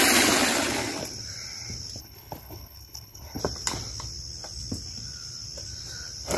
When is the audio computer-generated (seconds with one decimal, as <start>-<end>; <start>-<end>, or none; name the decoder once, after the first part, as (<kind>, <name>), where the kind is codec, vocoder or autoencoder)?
2.0-3.4 (codec, HILCodec)